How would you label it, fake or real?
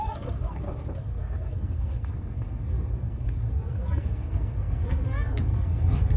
fake